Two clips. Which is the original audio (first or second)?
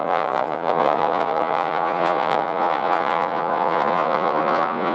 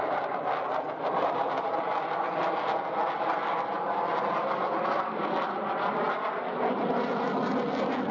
second